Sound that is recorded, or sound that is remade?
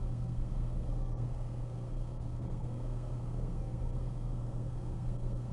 remade